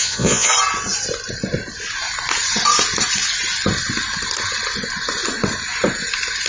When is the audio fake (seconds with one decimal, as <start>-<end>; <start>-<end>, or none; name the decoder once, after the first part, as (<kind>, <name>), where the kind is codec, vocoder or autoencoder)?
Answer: 0.0-0.5 (vocoder, Vocos)